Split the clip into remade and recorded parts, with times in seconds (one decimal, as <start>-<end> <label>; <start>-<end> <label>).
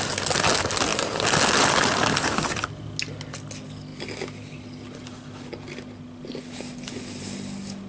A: 0.0-7.9 recorded